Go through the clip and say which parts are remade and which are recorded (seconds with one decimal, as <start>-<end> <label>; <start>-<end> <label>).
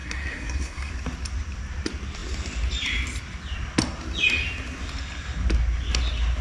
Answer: 0.0-0.9 remade; 0.9-6.4 recorded